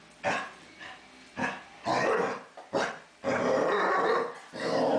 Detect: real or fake real